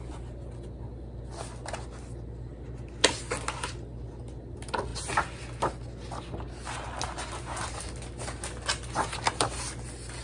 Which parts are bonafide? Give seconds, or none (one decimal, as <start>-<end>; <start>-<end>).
0.0-10.2